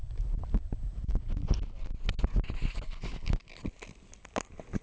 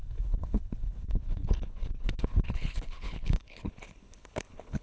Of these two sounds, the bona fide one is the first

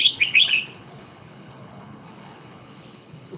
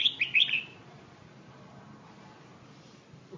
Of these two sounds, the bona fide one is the second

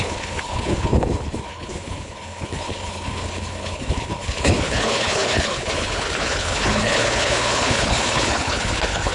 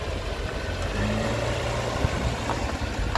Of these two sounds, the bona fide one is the second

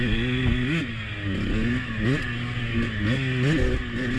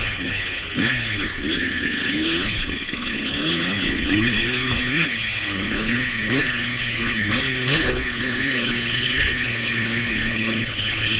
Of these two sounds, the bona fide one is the first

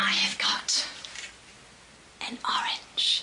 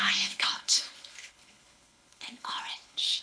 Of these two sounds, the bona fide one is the first